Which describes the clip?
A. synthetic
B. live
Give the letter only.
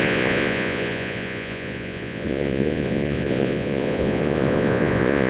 A